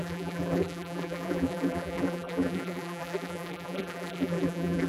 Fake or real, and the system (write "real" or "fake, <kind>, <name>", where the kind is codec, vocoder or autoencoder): fake, vocoder, BigVGAN v2